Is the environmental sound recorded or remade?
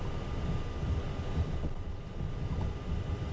recorded